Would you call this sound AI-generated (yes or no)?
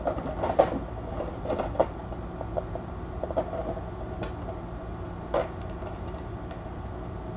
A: no